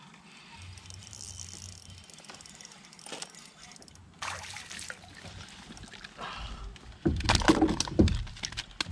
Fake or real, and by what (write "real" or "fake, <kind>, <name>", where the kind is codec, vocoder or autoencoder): real